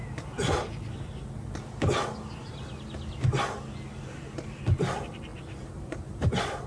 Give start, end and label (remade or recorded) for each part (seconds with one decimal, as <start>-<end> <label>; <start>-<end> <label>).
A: 0.0-3.9 recorded; 3.9-6.7 remade